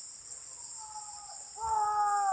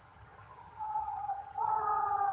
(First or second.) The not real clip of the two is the second